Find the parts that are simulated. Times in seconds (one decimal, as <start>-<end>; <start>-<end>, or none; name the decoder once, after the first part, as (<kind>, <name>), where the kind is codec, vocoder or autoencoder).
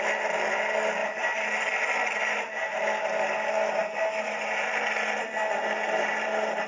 1.0-1.6 (vocoder, BigVGAN v2); 3.8-5.4